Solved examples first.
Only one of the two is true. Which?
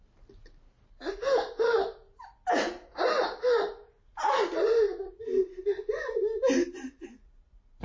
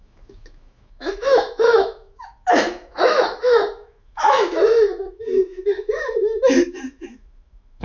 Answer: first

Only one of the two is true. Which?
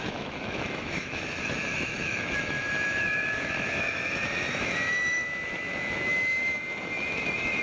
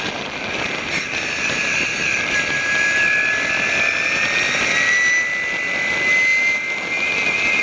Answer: second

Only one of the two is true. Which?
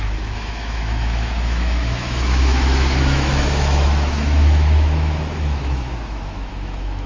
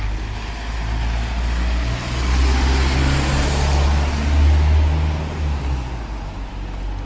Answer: second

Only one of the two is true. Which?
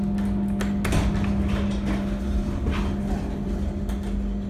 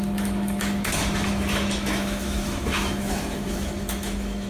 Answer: first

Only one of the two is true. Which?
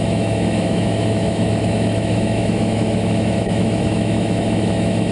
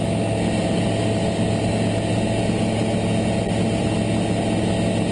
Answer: second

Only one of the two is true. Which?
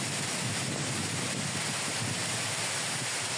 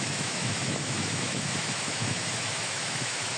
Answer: first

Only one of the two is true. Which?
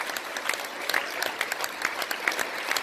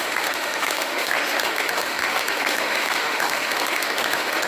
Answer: first